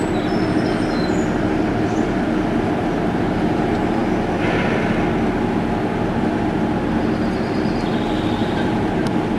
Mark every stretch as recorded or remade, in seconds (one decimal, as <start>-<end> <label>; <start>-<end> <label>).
0.0-8.4 recorded; 8.4-9.0 remade; 9.0-9.4 recorded